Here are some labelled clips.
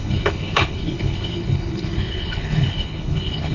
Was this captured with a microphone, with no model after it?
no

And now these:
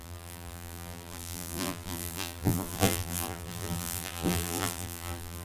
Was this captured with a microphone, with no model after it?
no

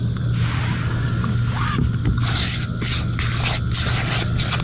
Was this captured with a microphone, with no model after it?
yes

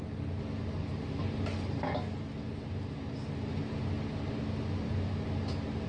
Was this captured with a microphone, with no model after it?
yes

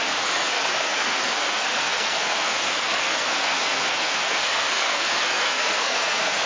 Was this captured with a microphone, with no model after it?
no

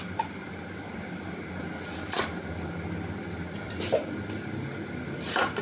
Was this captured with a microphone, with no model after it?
yes